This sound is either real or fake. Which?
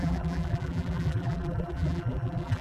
fake